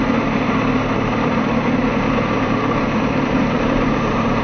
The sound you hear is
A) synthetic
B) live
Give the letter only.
A